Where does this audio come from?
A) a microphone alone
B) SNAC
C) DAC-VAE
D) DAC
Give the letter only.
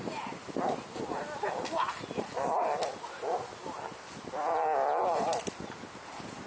A